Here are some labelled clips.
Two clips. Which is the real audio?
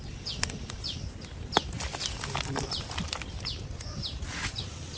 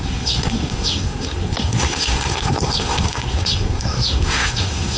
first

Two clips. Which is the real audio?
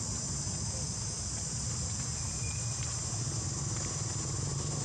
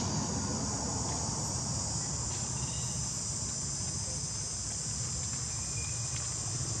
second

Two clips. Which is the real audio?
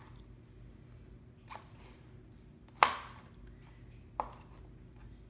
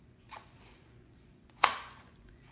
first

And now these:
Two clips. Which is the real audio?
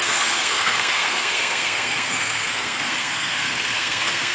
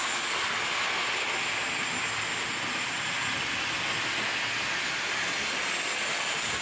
second